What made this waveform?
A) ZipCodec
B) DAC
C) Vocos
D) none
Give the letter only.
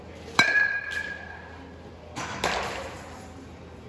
D